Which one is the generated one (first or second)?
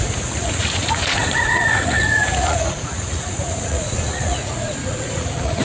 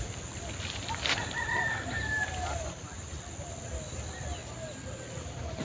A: first